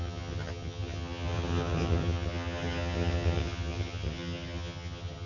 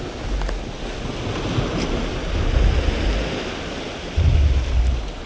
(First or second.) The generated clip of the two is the first